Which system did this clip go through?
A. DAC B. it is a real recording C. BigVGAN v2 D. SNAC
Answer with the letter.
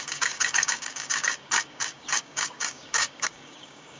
A